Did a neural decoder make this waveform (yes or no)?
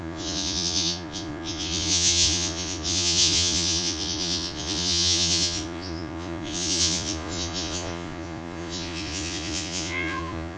yes